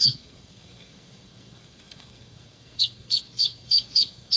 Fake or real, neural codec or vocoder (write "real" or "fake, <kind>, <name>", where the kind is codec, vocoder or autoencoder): fake, codec, SNAC